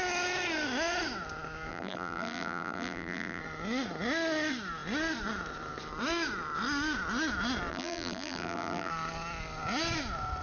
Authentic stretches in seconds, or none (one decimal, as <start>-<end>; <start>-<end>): 0.0-1.7; 3.4-7.7; 8.9-10.4